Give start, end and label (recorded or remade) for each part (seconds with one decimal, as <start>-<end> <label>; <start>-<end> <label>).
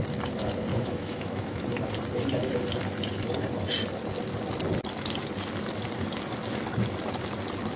0.0-0.7 recorded; 0.7-1.6 remade; 1.6-7.8 recorded